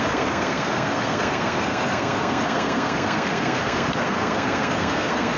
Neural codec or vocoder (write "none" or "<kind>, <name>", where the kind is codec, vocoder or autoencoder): codec, SNAC